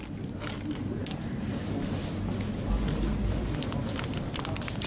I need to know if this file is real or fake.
real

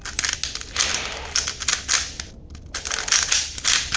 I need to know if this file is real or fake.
real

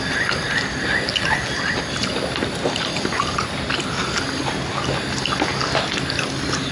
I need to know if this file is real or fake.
real